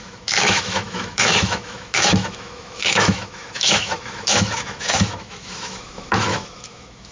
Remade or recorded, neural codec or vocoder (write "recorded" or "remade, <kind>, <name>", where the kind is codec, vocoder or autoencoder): remade, autoencoder, DAC-VAE